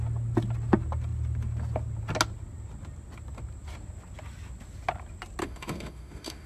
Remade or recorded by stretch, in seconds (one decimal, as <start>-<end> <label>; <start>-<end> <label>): 0.0-5.4 recorded; 5.4-6.5 remade